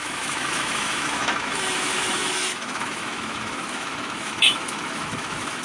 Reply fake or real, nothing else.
fake